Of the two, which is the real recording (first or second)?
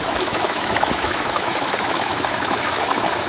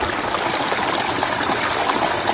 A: second